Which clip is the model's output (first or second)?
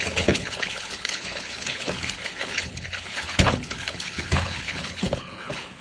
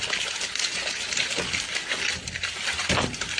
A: first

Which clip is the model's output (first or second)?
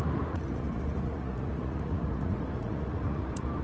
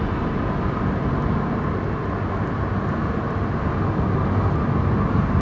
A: first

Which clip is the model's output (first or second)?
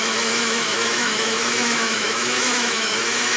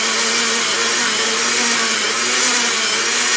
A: first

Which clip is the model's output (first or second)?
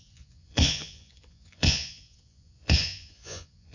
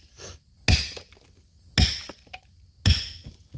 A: first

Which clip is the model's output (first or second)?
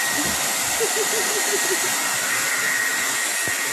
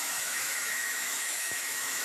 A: second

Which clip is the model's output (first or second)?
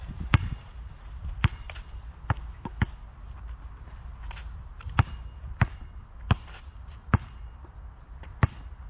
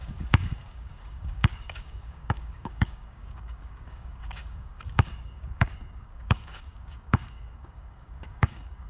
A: second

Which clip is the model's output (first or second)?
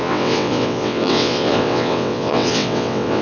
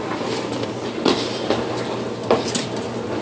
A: first